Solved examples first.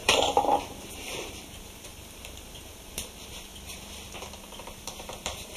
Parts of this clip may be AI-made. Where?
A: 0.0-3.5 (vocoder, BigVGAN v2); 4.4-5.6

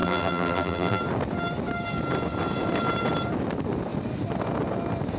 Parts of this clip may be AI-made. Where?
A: 0.0-1.0 (vocoder, BigVGAN v2)

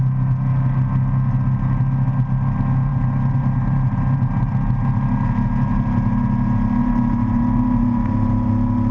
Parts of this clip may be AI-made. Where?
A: 2.9-4.5 (vocoder, BigVGAN v2); 6.8-8.5

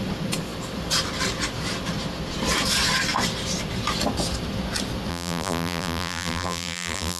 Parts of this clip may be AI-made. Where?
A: 5.1-7.2 (vocoder, BigVGAN v2)

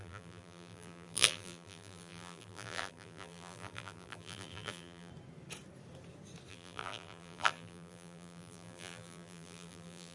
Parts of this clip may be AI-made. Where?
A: 0.0-5.1 (vocoder, BigVGAN v2); 6.5-10.1